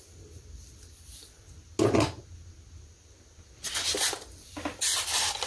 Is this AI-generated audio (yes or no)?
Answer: no